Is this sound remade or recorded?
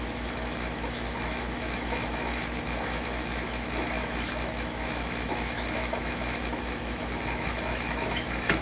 remade